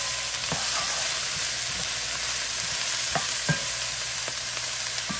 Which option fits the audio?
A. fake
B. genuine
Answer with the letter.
B